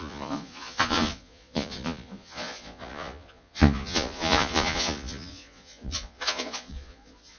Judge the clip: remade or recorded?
remade